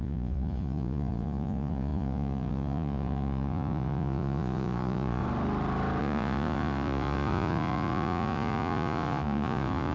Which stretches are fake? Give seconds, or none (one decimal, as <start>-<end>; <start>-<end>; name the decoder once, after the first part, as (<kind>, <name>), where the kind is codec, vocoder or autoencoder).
0.0-5.2 (vocoder, Vocos); 6.0-9.9